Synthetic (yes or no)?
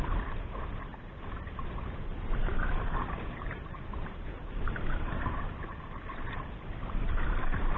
yes